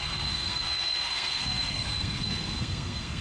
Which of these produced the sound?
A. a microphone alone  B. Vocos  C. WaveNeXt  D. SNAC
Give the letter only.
D